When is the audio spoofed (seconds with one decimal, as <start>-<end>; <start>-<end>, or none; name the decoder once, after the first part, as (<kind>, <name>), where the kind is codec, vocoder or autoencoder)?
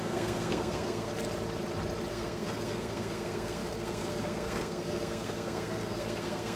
0.0-1.1 (codec, SNAC); 2.1-6.6